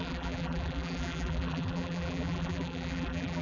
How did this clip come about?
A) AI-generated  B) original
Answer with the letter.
A